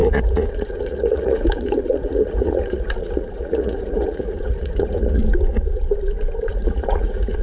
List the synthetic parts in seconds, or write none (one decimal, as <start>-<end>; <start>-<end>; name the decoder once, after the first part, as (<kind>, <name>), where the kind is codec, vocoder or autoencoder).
0.0-5.2 (vocoder, Vocos); 6.5-7.4